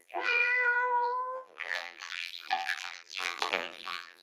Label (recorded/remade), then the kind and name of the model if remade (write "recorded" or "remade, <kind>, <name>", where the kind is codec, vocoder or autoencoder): remade, vocoder, BigVGAN v2